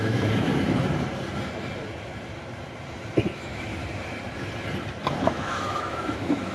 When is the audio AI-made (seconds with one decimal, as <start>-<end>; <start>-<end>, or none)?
0.0-0.5; 3.3-3.7; 5.1-6.5